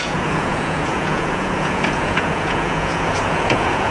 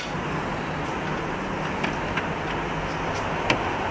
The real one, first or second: second